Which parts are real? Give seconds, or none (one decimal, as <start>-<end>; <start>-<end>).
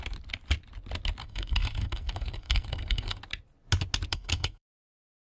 0.0-1.2; 3.2-4.1